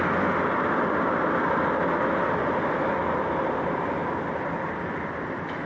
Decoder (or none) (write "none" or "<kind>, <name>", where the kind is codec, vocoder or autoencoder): none